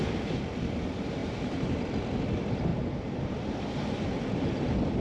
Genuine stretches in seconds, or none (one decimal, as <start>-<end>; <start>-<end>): 0.0-1.2; 1.8-2.7; 3.3-5.0